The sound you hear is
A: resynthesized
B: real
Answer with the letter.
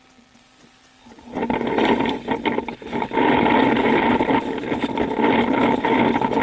B